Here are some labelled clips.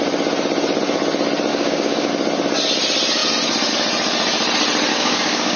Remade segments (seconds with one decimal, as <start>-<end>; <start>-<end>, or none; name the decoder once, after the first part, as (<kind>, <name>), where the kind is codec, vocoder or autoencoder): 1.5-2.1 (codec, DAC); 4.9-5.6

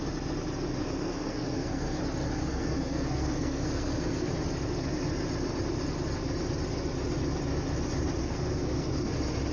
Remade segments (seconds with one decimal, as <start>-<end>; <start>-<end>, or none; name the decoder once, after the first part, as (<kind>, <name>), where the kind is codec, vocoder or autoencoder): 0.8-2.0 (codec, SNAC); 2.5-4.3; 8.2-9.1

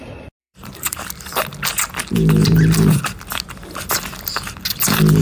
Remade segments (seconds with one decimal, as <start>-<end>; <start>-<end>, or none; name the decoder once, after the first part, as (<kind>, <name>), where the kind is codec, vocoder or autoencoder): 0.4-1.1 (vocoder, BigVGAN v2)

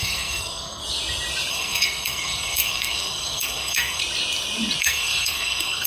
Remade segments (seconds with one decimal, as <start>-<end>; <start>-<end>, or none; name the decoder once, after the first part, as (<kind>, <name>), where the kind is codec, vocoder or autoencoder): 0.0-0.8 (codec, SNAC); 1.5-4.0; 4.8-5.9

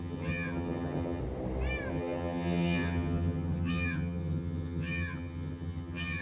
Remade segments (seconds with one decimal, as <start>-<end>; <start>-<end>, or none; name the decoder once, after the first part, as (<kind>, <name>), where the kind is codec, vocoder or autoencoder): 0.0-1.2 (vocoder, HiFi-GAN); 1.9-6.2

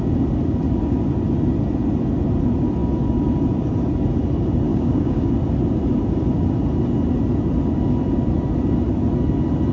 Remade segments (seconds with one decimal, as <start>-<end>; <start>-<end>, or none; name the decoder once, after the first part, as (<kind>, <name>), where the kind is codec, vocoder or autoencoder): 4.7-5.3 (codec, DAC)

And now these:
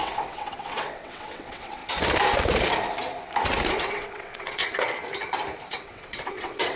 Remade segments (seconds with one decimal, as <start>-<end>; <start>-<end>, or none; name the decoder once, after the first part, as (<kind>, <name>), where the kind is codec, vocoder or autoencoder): 0.0-1.8 (vocoder, WaveNeXt); 3.7-4.6; 5.7-6.8